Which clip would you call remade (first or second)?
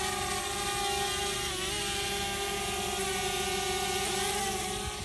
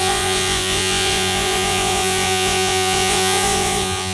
second